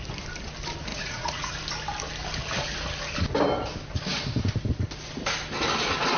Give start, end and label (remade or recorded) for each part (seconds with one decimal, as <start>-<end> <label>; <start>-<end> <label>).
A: 0.0-0.9 recorded; 0.9-1.5 remade; 1.5-6.2 recorded